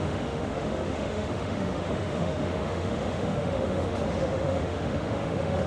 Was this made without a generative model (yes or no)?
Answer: no